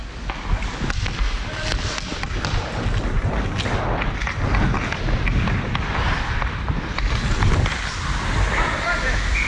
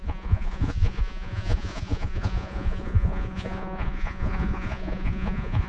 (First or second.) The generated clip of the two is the second